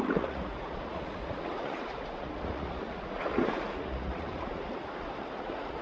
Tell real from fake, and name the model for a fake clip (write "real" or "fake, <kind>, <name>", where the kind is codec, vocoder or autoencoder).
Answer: fake, vocoder, Vocos